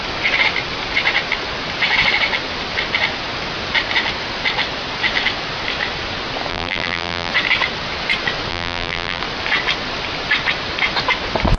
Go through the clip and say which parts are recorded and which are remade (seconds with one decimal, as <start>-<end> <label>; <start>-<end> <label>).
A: 0.0-6.5 recorded; 6.5-7.3 remade; 7.3-8.5 recorded; 8.5-9.2 remade; 9.2-11.6 recorded